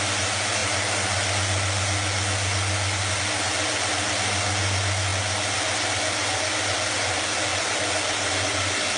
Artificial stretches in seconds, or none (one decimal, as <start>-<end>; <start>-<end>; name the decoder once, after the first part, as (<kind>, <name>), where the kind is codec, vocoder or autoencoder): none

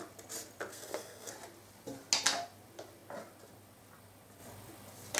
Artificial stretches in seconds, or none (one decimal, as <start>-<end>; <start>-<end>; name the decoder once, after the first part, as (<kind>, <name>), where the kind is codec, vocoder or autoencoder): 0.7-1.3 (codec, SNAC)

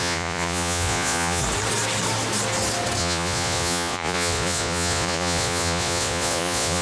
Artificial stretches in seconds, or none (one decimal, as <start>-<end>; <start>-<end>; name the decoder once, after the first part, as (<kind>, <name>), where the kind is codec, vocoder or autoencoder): 0.0-1.4 (vocoder, Vocos); 3.0-6.8